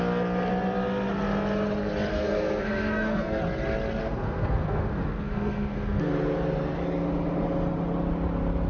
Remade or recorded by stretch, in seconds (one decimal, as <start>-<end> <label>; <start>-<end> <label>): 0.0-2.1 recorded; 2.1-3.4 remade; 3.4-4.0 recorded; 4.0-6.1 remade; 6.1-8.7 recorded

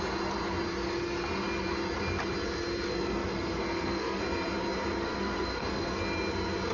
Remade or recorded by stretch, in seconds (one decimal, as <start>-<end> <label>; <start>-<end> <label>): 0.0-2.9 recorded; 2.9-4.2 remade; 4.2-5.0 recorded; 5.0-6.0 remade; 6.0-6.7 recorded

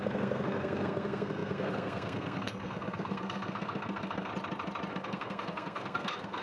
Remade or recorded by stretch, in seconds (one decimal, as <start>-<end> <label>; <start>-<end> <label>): 0.0-4.3 remade; 4.3-4.9 recorded; 4.9-6.4 remade

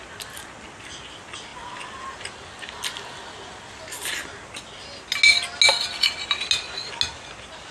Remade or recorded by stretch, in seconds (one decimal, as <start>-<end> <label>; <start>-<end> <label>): 0.0-7.7 recorded

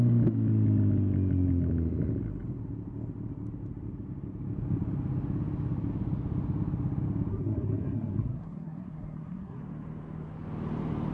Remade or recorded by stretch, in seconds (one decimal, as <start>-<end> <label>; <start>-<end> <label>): 0.0-7.3 recorded; 7.3-9.6 remade; 9.6-11.1 recorded

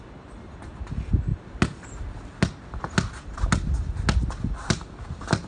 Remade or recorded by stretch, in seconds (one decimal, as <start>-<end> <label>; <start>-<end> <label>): 0.0-5.5 recorded